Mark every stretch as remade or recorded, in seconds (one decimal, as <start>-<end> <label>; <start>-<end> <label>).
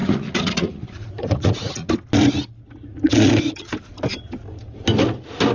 0.0-1.9 remade; 1.9-2.8 recorded; 2.8-3.4 remade; 3.4-5.5 recorded